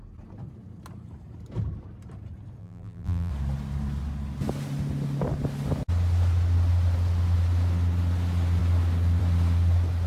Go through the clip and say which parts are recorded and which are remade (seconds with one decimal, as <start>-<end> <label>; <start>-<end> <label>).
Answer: 0.0-2.6 recorded; 2.6-3.3 remade; 3.3-10.1 recorded